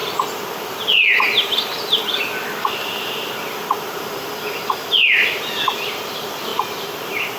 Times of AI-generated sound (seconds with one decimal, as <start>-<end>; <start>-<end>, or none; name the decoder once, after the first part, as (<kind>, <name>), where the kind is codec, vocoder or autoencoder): 0.0-4.4 (vocoder, BigVGAN v2); 6.5-7.4